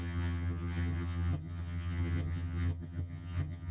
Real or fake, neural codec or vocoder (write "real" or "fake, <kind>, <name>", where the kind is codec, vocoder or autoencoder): fake, vocoder, HiFi-GAN